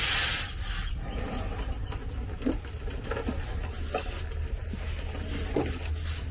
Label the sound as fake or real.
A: real